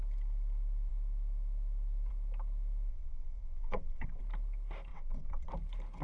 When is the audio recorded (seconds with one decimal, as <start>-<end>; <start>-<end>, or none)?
0.0-2.9; 4.2-4.9; 5.5-6.0